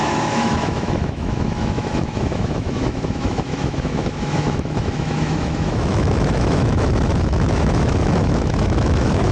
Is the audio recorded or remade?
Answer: remade